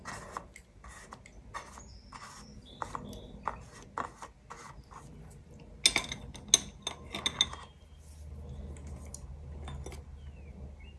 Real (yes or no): yes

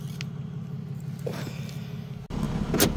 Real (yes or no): yes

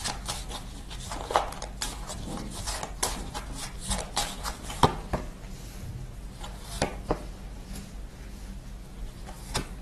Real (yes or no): yes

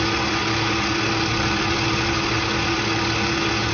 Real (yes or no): yes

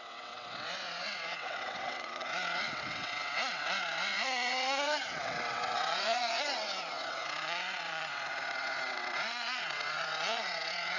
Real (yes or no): no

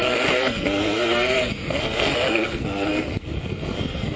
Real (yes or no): no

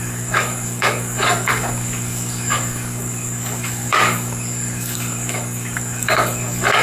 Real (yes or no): no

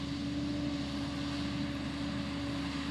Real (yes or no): yes